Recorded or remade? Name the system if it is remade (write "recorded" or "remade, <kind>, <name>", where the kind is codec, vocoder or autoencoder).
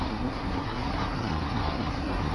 remade, codec, SNAC